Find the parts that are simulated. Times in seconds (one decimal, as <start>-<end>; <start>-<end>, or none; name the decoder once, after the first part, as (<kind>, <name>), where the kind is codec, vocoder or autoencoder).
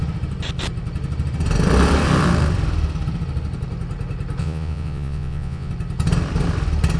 4.4-5.7 (vocoder, Vocos)